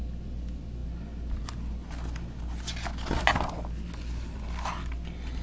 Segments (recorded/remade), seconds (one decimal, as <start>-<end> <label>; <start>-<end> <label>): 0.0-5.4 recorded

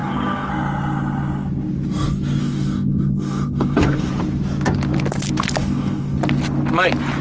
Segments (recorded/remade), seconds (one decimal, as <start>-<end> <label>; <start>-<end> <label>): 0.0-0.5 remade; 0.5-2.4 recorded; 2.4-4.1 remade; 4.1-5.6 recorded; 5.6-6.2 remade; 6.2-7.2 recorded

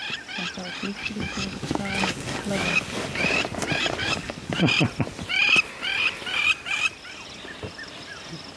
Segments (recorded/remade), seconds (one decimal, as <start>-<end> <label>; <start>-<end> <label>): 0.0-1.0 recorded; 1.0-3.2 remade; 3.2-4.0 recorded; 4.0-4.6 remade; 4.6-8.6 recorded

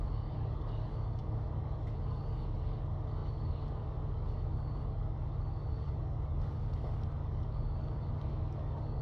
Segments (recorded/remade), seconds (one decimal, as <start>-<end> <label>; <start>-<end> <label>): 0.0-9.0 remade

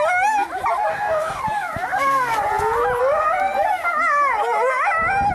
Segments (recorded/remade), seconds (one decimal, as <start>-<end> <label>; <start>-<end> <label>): 0.0-0.9 recorded; 0.9-1.4 remade; 1.4-5.3 recorded